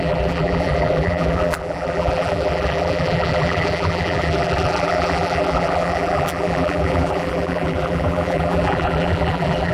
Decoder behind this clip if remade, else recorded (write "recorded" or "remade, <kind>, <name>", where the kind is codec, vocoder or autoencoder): remade, vocoder, BigVGAN v2